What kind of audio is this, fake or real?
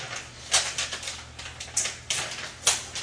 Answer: real